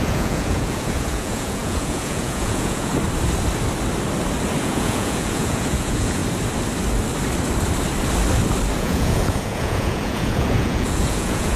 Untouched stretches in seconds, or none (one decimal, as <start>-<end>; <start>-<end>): 2.9-4.6; 6.2-8.8